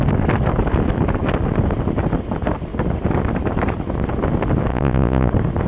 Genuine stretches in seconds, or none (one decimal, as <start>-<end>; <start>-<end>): 0.0-4.7; 5.3-5.7